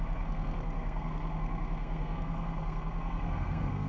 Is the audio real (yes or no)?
no